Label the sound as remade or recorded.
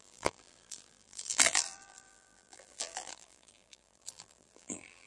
remade